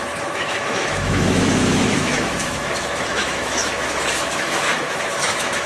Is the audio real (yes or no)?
no